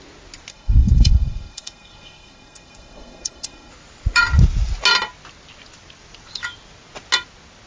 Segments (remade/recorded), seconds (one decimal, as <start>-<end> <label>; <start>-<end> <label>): 0.0-0.5 recorded; 0.5-3.7 remade; 3.7-7.7 recorded